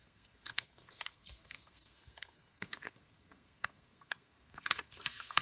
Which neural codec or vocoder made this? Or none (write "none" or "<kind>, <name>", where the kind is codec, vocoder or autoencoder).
codec, SNAC